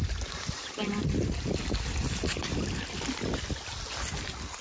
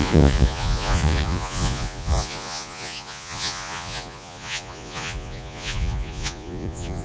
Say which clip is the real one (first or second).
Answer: first